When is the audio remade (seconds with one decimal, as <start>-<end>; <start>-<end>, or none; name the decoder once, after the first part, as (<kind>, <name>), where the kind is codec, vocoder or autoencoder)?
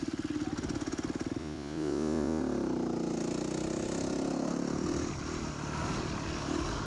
1.4-2.4 (vocoder, Vocos)